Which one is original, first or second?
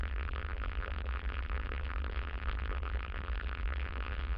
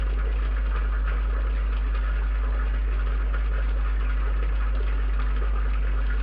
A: second